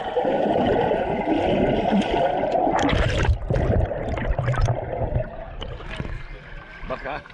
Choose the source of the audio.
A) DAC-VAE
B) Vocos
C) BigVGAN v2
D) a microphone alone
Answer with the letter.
D